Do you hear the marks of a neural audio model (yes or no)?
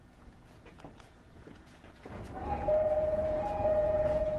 yes